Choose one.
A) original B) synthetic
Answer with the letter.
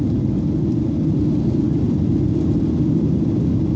A